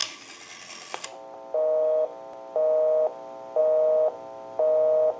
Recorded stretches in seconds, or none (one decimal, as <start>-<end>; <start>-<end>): 0.0-5.2